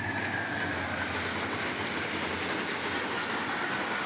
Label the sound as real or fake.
real